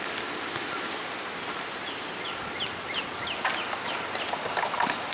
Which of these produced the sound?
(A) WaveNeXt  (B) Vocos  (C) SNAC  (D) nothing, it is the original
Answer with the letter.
D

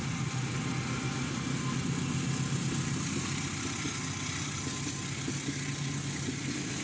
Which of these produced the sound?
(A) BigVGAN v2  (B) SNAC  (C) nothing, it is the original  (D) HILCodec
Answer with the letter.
C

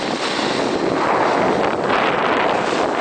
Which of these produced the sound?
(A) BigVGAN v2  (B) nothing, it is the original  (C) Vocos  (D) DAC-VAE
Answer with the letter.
B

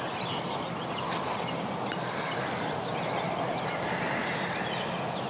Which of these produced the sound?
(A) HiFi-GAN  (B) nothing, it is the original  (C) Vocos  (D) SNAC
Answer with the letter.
B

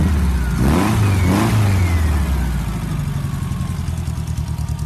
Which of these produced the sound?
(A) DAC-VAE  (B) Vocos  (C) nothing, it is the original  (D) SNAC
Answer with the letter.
C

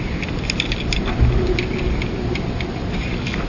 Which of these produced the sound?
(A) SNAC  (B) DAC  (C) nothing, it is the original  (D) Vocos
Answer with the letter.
C